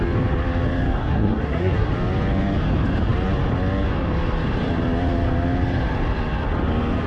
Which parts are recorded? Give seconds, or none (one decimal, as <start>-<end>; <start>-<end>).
0.0-1.0; 1.9-7.1